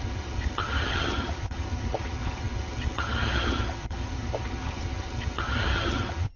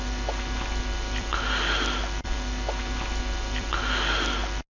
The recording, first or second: second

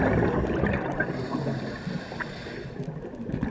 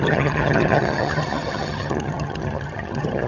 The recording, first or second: first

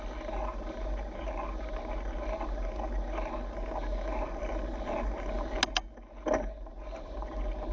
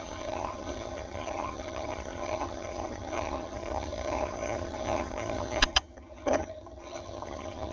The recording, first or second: first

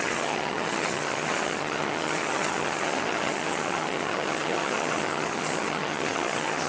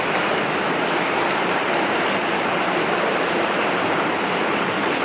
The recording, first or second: second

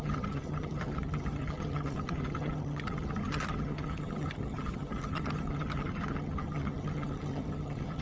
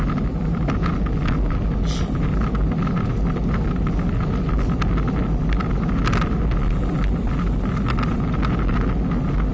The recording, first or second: second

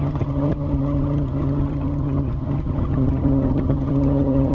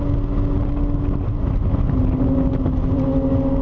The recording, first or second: second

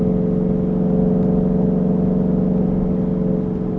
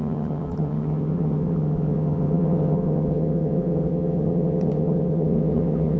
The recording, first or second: first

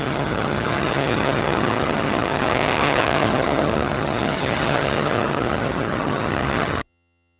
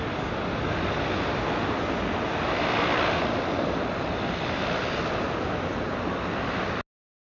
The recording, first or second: second